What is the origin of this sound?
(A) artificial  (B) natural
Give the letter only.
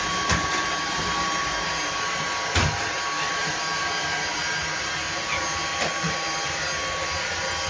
B